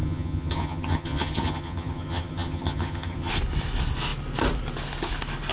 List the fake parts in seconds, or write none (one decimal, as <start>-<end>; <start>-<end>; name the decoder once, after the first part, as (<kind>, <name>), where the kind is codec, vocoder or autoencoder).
0.0-3.3 (vocoder, HiFi-GAN)

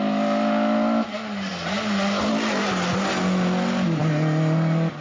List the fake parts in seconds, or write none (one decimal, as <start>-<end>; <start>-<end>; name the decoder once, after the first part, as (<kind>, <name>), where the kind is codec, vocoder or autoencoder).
none

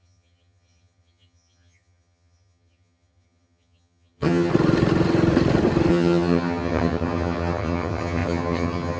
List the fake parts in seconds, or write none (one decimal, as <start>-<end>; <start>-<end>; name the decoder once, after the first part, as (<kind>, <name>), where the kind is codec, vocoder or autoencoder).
0.0-4.5 (vocoder, HiFi-GAN); 5.9-9.0

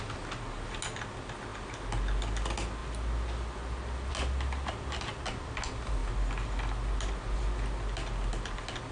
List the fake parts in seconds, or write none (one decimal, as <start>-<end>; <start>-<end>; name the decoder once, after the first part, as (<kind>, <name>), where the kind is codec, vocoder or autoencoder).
none

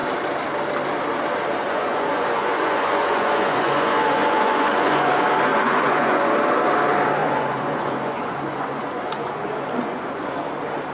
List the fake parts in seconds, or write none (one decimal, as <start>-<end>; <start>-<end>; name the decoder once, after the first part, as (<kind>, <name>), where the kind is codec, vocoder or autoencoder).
1.6-5.1 (vocoder, Vocos); 5.5-6.3; 7.2-10.3

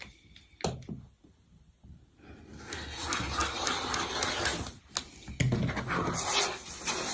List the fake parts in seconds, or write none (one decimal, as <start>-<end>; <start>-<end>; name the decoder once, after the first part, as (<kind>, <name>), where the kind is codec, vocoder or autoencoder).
3.4-4.1 (vocoder, BigVGAN v2)

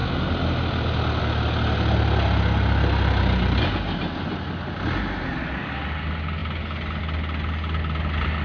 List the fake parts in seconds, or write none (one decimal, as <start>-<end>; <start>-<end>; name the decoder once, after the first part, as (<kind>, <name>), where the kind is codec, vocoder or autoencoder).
none

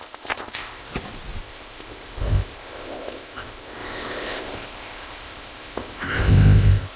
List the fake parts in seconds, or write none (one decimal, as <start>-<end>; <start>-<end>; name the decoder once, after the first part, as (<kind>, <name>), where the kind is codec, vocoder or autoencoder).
0.0-0.9 (codec, ZipCodec); 1.4-7.0